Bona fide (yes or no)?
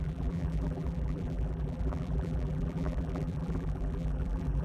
no